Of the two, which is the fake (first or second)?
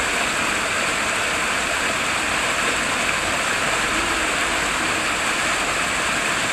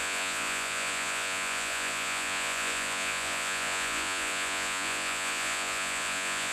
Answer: second